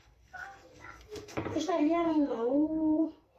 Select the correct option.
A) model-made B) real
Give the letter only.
A